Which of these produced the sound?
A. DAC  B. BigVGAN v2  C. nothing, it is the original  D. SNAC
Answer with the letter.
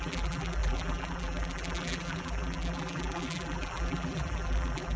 B